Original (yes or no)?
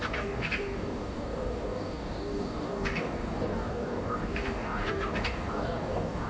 no